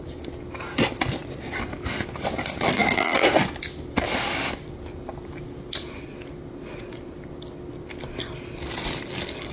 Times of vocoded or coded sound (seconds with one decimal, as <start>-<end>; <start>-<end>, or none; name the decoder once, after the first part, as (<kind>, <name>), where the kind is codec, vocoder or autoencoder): none